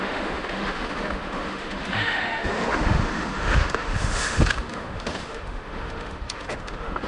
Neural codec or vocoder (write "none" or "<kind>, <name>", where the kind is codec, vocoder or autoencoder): autoencoder, DAC-VAE